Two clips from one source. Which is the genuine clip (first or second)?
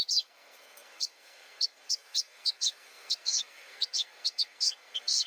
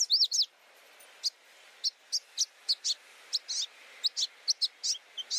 second